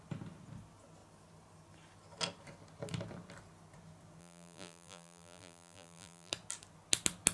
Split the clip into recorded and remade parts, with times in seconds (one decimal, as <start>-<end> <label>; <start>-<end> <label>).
0.0-4.2 recorded; 4.2-6.3 remade; 6.3-7.3 recorded